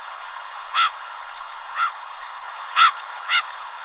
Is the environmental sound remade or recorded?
remade